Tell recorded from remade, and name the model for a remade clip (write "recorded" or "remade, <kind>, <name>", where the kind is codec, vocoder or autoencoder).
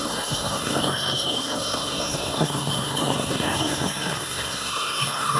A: remade, codec, SNAC